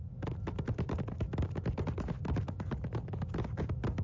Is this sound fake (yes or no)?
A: no